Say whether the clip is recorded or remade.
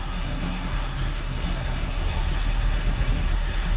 remade